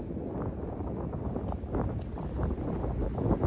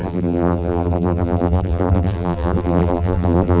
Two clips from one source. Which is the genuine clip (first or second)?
first